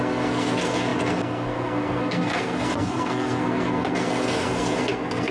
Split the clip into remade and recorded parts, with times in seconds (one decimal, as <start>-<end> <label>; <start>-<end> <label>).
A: 0.0-5.3 remade

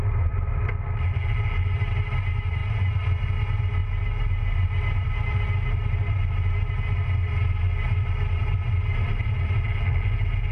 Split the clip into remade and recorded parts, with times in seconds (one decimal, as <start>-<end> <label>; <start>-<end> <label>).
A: 0.0-10.5 recorded

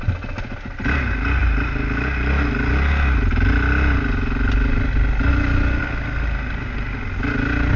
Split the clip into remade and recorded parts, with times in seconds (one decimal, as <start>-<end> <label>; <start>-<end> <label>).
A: 0.0-7.8 recorded

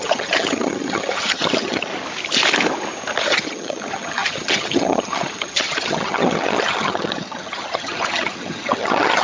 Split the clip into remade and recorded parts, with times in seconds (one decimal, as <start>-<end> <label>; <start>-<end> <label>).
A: 0.0-1.9 remade; 1.9-3.2 recorded; 3.2-9.2 remade

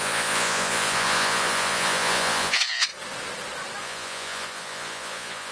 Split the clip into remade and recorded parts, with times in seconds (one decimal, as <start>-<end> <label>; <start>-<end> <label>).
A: 0.0-2.9 remade; 2.9-3.8 recorded; 3.8-5.5 remade